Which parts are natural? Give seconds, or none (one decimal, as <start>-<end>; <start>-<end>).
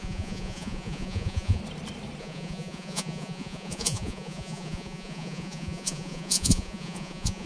1.6-2.2